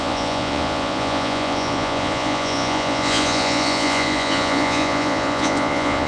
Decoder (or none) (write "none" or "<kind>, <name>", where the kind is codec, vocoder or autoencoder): vocoder, Vocos